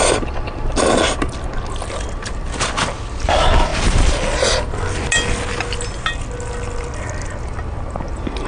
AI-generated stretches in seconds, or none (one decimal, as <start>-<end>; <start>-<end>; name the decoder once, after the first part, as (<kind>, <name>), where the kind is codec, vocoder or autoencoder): none